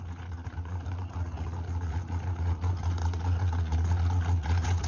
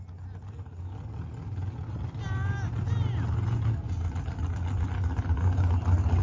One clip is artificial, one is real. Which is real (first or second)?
second